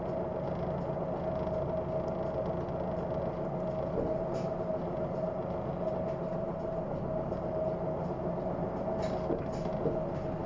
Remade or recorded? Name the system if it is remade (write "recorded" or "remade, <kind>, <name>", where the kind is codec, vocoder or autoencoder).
recorded